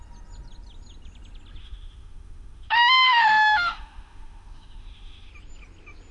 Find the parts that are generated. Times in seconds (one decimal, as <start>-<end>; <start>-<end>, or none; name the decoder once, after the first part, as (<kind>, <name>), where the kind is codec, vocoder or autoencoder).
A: 1.6-5.3 (autoencoder, DAC-VAE)